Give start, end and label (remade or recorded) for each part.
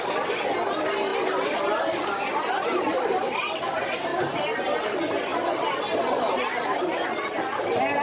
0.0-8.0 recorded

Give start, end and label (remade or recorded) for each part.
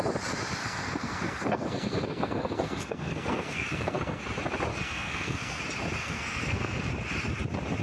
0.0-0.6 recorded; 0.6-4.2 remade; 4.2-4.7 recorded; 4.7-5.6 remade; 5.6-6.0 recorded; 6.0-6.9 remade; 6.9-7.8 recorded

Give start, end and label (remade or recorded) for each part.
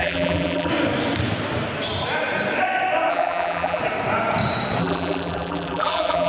0.0-0.7 remade; 0.7-3.1 recorded; 3.1-3.8 remade; 3.8-4.8 recorded; 4.8-6.3 remade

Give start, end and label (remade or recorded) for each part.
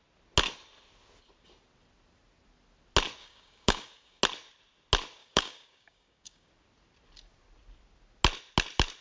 0.0-3.2 recorded; 3.2-4.2 remade; 4.2-5.2 recorded; 5.2-6.5 remade; 6.5-9.0 recorded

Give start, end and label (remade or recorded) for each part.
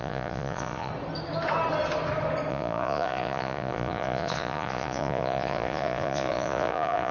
0.0-0.9 remade; 0.9-2.5 recorded; 2.5-7.1 remade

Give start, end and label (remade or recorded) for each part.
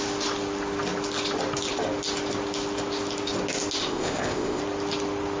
0.0-3.8 recorded; 3.8-4.6 remade; 4.6-5.4 recorded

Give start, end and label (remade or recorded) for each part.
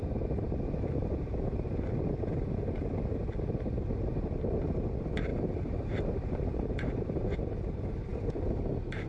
0.0-5.3 recorded; 5.3-7.2 remade; 7.2-8.1 recorded; 8.1-8.7 remade; 8.7-9.1 recorded